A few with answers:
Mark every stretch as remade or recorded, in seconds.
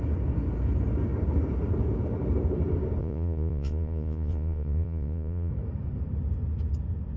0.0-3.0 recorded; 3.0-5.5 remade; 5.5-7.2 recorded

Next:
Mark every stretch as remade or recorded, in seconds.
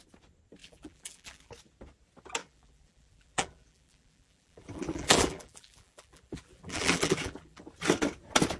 0.0-0.6 recorded; 0.6-1.5 remade; 1.5-2.4 recorded; 2.4-7.6 remade; 7.6-8.6 recorded